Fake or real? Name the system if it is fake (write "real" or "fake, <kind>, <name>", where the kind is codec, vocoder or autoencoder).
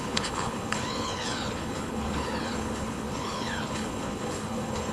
fake, codec, HILCodec